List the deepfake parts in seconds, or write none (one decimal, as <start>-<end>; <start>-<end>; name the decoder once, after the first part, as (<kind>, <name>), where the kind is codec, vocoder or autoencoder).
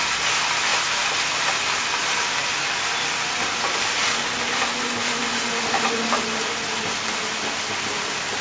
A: none